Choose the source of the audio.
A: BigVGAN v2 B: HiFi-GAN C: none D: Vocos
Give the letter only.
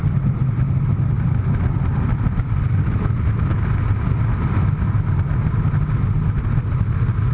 C